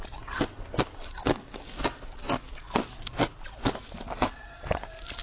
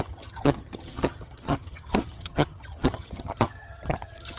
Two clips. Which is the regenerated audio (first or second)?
second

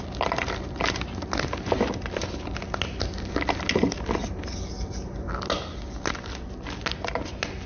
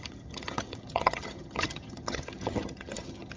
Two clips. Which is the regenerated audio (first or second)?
second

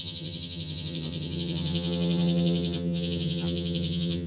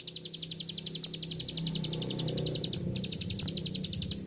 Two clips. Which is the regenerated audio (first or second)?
first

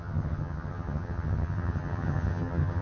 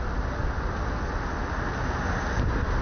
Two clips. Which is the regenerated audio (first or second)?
first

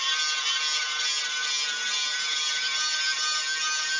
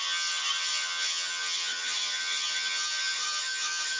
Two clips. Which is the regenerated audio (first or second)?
second